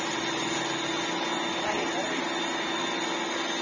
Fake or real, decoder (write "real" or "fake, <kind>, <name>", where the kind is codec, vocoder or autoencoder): real